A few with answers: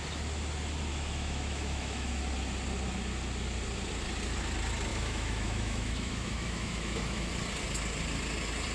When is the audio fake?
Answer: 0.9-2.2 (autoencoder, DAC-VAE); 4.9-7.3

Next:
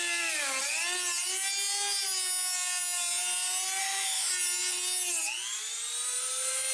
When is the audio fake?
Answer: 3.8-4.3 (autoencoder, DAC-VAE)

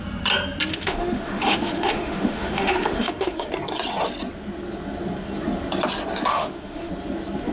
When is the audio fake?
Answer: 0.7-3.5 (autoencoder, DAC-VAE); 6.3-6.9

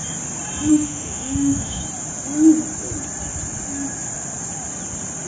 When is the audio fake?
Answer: 0.7-1.8 (autoencoder, DAC-VAE)

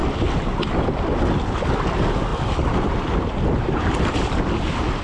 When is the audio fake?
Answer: none

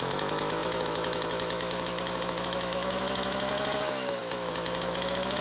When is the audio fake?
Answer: 0.0-5.4 (autoencoder, DAC-VAE)

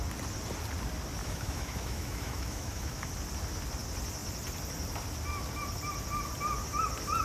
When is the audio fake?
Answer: 1.2-3.1 (autoencoder, DAC-VAE)